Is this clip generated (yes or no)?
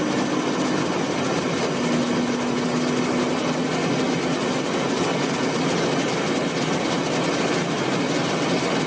no